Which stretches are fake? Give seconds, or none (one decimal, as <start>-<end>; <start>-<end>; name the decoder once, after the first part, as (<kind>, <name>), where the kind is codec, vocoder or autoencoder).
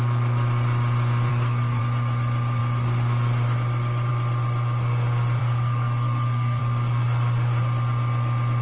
1.3-1.8 (codec, SNAC); 5.4-6.6